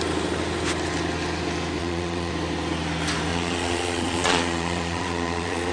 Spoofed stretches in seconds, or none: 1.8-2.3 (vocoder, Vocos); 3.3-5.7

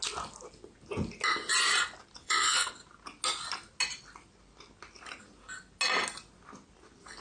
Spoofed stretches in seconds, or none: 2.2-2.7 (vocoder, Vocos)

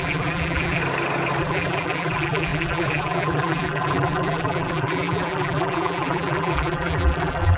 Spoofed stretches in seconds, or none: 0.0-0.8 (vocoder, BigVGAN v2); 1.4-7.6

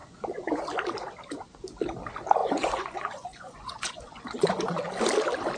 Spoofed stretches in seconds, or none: 0.0-0.6 (vocoder, Vocos); 2.4-4.8

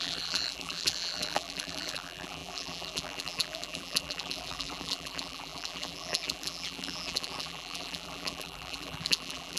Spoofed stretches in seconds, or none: 0.0-9.6 (vocoder, BigVGAN v2)

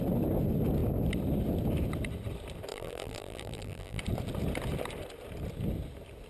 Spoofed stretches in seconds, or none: 2.7-4.0 (vocoder, BigVGAN v2)